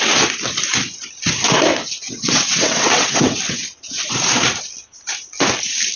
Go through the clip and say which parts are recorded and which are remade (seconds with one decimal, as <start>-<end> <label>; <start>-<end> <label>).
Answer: 0.0-1.7 recorded; 1.7-4.0 remade; 4.0-6.0 recorded

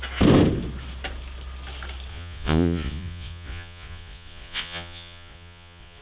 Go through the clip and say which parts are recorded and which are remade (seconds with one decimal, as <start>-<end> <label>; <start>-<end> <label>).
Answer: 0.0-2.1 recorded; 2.1-6.0 remade